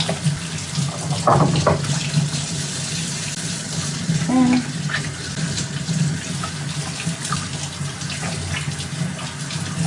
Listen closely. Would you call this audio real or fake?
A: real